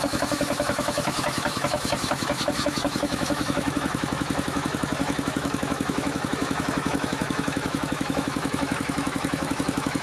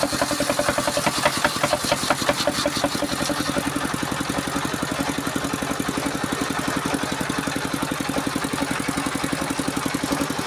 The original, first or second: second